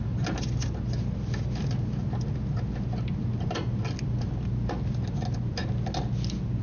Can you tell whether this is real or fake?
real